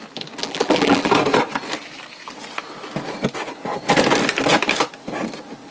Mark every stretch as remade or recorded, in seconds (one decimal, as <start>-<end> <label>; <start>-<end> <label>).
0.0-0.4 recorded; 0.4-1.1 remade; 1.1-5.7 recorded